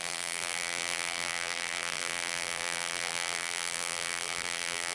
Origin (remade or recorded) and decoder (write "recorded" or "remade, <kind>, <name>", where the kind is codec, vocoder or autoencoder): remade, vocoder, BigVGAN v2